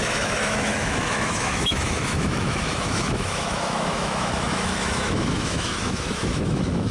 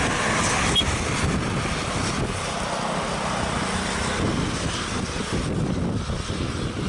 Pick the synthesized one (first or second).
first